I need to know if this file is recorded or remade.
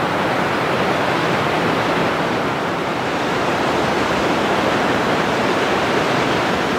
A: remade